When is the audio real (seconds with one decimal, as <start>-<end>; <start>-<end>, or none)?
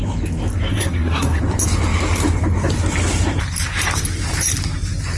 0.0-0.7; 1.4-5.2